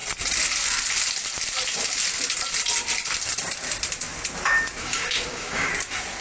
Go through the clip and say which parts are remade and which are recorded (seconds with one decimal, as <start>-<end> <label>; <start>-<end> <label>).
0.0-4.8 recorded; 4.8-5.7 remade; 5.7-6.2 recorded